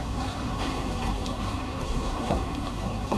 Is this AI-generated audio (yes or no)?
yes